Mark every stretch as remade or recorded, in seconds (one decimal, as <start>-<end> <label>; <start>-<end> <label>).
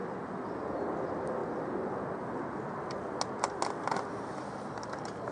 0.0-5.3 recorded